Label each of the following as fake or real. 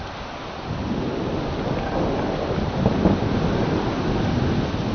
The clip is real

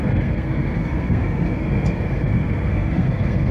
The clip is fake